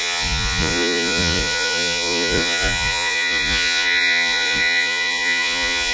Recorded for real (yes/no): no